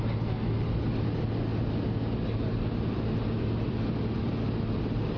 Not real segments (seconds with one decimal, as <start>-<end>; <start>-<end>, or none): none